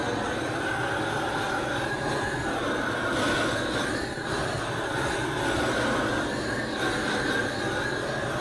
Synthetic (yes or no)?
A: no